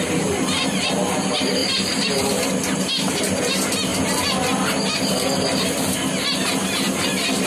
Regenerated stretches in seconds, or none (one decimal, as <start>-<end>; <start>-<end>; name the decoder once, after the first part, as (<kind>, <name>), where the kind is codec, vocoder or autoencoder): 1.6-2.5 (vocoder, BigVGAN v2)